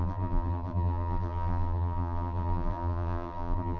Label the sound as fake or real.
fake